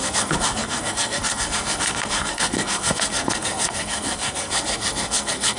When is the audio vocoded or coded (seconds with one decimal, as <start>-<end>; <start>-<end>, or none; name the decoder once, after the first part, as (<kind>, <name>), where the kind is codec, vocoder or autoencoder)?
0.0-5.6 (codec, SNAC)